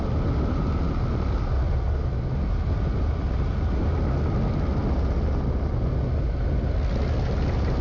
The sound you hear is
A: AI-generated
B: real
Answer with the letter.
B